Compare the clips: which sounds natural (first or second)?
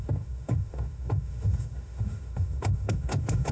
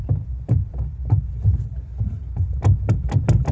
second